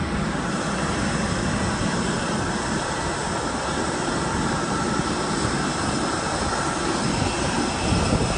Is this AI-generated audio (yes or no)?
no